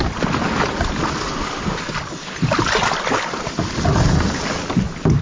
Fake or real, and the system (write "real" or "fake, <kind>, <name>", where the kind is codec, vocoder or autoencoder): real